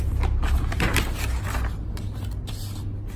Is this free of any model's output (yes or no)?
yes